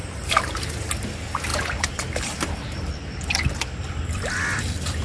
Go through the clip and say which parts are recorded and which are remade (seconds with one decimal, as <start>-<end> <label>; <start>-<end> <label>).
0.0-0.5 remade; 0.5-1.5 recorded; 1.5-2.9 remade; 2.9-5.0 recorded